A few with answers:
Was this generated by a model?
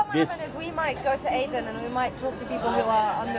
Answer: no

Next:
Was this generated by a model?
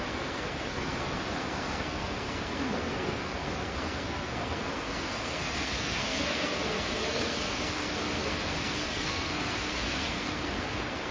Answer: yes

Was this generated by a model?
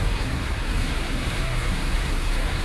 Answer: yes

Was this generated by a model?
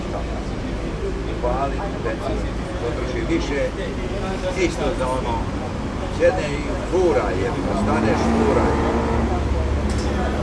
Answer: no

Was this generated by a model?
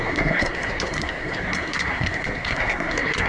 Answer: yes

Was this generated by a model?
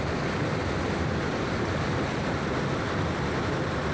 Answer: no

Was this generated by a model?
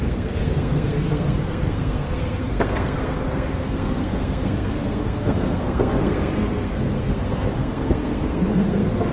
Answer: yes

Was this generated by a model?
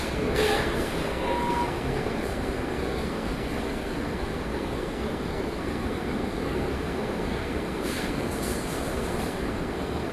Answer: yes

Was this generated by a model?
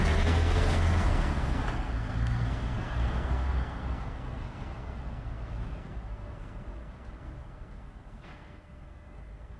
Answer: yes